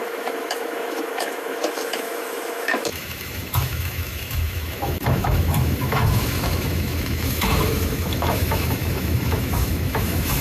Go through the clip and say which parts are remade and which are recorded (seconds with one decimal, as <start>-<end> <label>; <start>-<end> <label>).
0.0-10.4 remade